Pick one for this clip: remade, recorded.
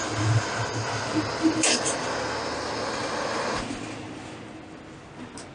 recorded